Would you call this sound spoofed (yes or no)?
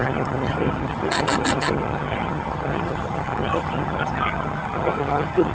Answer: yes